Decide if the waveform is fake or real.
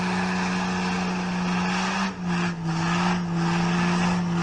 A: real